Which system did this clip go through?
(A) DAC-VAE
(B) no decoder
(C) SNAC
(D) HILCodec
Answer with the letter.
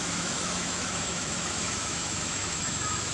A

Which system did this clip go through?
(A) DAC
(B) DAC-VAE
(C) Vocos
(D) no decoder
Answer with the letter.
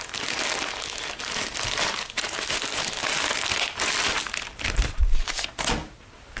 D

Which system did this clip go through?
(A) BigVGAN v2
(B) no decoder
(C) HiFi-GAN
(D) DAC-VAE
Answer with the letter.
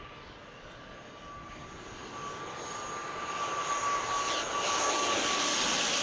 B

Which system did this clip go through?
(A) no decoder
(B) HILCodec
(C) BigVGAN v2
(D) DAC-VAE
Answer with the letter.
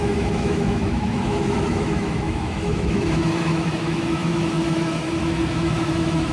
D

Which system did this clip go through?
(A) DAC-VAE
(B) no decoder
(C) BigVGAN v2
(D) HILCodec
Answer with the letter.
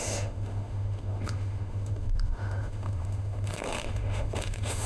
A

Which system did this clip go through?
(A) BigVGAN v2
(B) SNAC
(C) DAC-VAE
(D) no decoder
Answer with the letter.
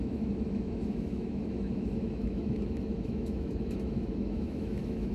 C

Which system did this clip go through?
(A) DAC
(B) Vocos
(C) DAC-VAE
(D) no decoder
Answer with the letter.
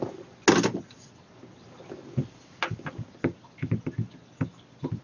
D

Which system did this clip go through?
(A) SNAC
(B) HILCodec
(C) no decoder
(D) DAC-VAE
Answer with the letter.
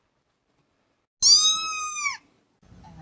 C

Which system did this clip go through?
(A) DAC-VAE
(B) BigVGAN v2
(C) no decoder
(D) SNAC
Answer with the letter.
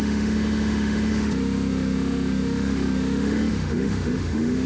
A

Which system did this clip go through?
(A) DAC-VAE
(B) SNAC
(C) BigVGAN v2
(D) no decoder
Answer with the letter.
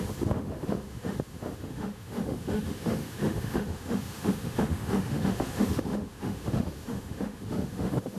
A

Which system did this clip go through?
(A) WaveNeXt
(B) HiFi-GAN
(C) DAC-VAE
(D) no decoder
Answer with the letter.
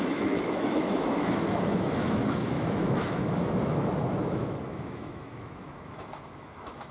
C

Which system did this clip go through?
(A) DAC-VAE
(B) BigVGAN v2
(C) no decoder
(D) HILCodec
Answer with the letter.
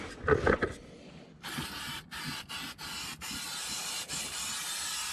C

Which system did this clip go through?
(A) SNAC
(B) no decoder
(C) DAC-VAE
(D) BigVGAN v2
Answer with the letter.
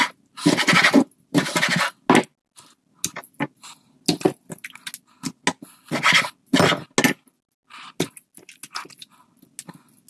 B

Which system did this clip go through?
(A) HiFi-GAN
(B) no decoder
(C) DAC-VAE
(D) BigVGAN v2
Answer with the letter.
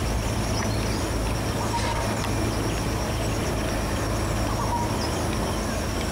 B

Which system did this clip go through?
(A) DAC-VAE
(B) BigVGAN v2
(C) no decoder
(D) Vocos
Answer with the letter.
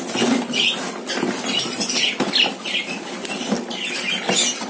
C